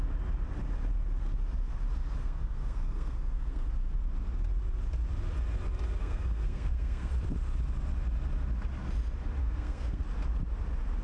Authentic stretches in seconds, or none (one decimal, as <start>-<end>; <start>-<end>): 0.0-2.2; 3.7-6.0; 7.1-9.4; 10.0-11.0